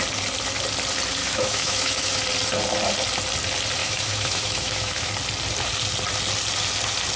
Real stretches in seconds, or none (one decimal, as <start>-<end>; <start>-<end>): 0.0-1.2; 2.2-3.8; 5.1-7.2